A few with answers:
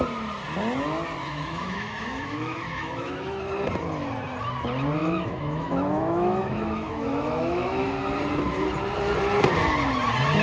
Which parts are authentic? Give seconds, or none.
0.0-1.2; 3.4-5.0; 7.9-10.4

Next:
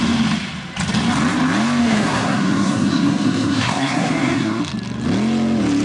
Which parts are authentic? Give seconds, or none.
0.0-1.8; 4.6-5.8

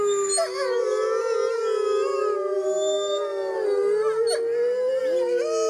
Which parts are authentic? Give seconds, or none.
0.0-5.7

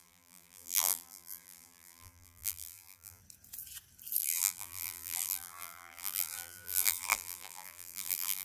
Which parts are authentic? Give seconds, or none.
3.2-4.2